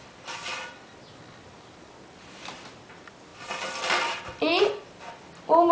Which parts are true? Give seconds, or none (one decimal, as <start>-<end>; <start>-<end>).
0.0-5.7